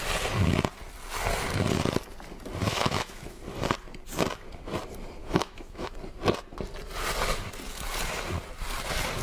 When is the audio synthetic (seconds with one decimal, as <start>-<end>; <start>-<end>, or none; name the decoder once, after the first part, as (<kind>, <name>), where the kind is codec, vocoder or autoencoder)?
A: 2.7-3.4 (autoencoder, DAC-VAE); 5.2-5.9